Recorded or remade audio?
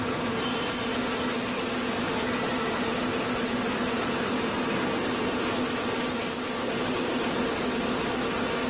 recorded